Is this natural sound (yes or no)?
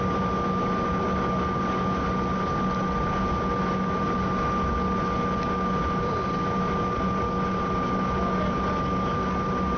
yes